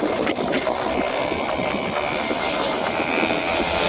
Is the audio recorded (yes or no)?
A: yes